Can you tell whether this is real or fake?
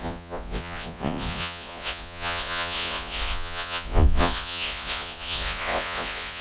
fake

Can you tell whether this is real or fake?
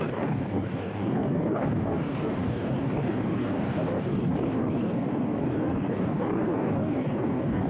fake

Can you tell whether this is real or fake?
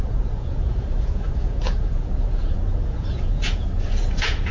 fake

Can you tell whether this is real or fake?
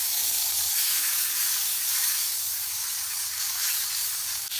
fake